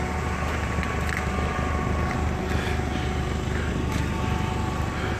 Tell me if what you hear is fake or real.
real